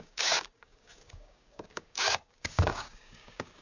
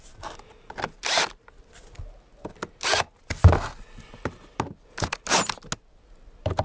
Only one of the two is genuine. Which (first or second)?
second